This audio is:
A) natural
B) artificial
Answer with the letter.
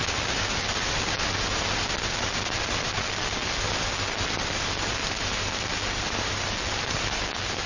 A